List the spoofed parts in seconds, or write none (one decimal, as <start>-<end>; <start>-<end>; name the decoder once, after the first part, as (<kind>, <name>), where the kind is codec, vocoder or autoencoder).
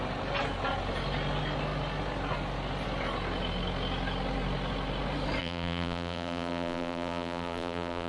5.4-8.1 (vocoder, BigVGAN v2)